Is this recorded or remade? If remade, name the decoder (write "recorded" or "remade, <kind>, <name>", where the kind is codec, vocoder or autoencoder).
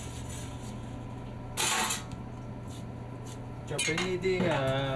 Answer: recorded